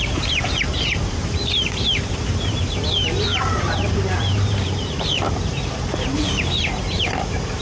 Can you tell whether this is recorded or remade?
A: remade